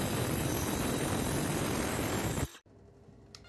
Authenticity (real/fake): real